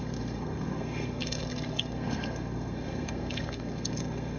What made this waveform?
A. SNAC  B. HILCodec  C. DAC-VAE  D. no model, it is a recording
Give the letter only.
A